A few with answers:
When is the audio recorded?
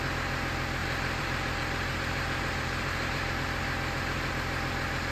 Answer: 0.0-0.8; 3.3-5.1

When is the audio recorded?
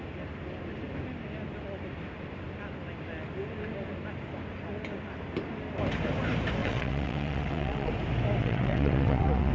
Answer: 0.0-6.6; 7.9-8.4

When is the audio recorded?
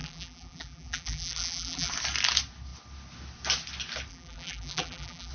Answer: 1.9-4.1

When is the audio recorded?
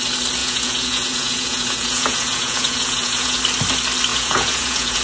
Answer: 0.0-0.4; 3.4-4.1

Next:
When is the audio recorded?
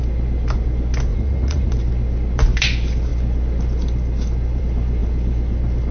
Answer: 0.0-1.1; 1.7-5.9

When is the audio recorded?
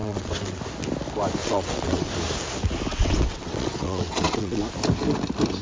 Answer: 0.6-1.4; 2.1-2.9; 4.6-5.6